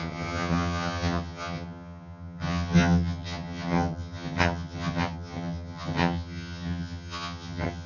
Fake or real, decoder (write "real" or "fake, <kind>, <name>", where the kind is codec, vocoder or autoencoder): fake, vocoder, HiFi-GAN